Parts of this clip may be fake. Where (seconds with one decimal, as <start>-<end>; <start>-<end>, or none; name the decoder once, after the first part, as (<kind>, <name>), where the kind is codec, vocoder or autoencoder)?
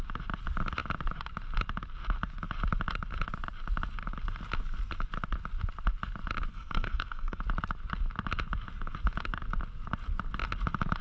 6.5-7.4 (codec, SNAC)